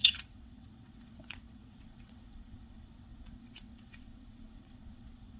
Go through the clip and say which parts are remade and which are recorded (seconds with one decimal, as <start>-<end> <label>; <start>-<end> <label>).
0.0-5.4 remade